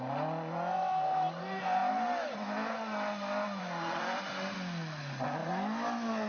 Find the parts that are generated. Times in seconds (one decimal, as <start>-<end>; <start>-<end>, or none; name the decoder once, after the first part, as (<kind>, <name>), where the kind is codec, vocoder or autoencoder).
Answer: none